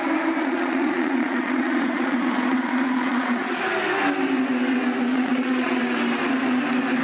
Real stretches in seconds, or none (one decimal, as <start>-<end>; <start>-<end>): 0.0-0.4; 3.6-5.1; 5.8-7.0